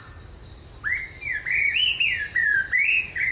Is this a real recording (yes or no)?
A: yes